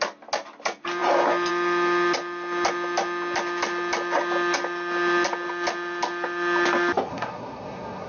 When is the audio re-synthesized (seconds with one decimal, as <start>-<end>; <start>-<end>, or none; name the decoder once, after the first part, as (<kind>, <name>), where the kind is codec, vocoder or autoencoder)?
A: 7.1-8.1 (codec, SNAC)